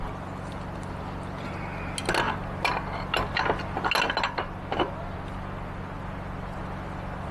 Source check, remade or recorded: recorded